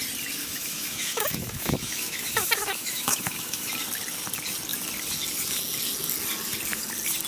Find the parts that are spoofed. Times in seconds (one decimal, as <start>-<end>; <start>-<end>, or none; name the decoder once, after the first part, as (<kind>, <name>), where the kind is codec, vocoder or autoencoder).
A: 0.4-3.7 (autoencoder, DAC-VAE)